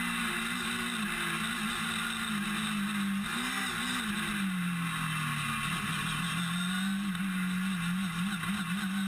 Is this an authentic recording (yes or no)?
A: yes